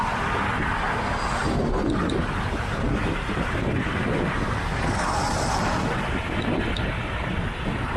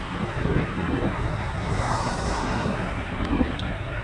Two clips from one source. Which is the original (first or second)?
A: first